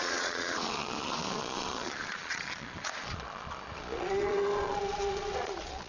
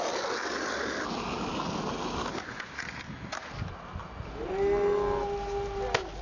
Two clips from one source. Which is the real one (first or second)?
second